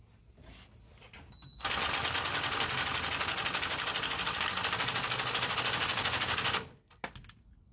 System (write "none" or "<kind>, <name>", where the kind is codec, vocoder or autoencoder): none